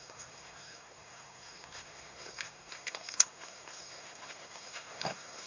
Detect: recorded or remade remade